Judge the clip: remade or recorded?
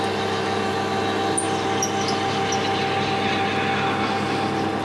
recorded